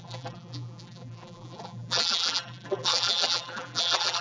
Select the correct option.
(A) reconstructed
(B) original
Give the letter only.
A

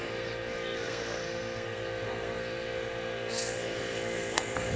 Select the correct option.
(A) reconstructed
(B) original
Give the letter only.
A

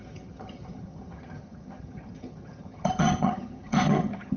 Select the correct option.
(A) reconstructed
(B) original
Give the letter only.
A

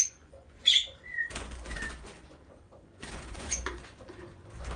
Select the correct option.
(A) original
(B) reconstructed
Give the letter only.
B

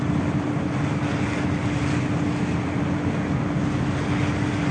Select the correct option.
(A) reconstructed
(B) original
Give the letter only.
B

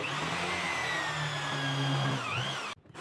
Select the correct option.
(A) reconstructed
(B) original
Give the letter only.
B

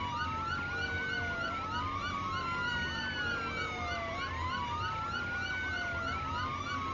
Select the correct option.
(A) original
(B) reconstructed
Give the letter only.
A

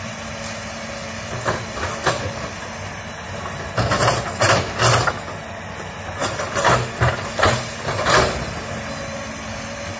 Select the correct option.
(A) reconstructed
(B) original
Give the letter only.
B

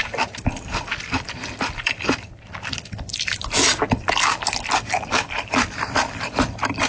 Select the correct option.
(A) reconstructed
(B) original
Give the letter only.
A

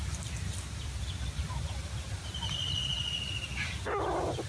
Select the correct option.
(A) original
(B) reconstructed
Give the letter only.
A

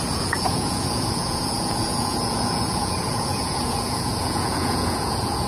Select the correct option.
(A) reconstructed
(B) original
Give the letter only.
A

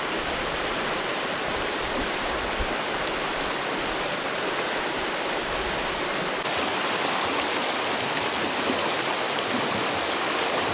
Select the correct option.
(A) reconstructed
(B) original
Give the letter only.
B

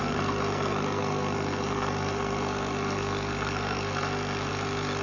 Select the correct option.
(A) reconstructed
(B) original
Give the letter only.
A